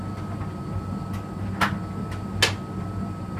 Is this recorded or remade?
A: recorded